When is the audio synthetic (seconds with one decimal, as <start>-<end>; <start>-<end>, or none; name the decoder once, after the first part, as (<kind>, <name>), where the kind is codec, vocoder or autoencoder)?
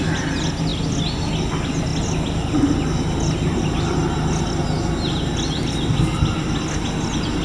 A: none